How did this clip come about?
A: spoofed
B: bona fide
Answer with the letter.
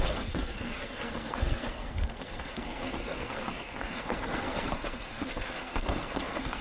A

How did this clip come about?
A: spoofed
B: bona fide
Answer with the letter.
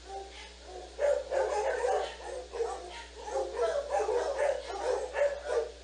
B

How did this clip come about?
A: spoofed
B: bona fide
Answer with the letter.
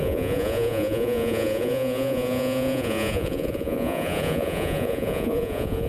A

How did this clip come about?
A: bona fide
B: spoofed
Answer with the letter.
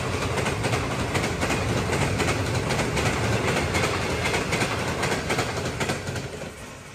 A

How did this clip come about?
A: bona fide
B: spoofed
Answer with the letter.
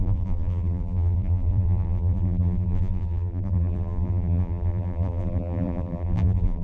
B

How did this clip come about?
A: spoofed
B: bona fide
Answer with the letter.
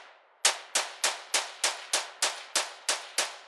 B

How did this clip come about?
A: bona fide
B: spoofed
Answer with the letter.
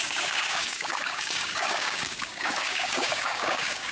B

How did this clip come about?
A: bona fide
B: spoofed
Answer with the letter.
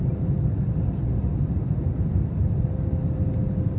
A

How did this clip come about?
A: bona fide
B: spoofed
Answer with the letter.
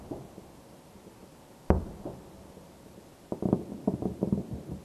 A